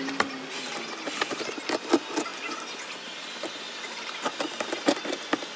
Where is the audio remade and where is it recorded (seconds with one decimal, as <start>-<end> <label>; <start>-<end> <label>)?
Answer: 0.0-5.6 recorded